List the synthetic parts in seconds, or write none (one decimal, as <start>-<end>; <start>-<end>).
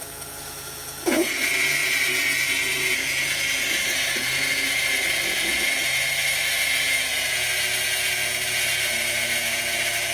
0.0-10.1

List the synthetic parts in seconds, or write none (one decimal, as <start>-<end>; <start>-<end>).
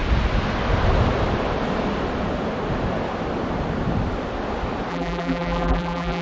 4.9-6.2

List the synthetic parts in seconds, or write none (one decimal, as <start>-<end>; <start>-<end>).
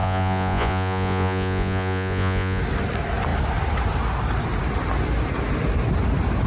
0.0-2.6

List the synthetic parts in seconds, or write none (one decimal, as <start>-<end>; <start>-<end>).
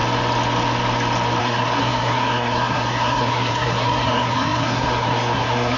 1.4-5.8